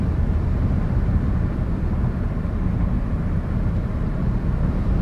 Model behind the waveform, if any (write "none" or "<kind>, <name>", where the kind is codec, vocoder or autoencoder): vocoder, BigVGAN v2